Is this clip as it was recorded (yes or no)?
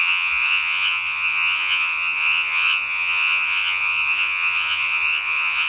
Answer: no